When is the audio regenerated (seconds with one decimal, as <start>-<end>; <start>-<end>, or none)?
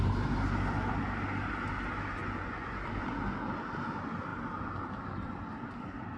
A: 2.2-2.8